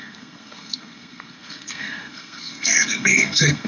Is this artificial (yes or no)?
yes